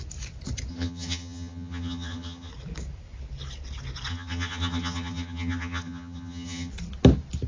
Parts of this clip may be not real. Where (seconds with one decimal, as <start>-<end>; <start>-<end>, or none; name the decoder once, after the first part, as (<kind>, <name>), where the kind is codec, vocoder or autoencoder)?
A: 0.7-2.5 (vocoder, HiFi-GAN); 4.1-6.7